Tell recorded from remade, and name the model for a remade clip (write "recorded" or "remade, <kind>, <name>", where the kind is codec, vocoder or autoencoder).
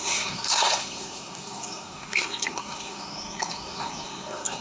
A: remade, codec, SNAC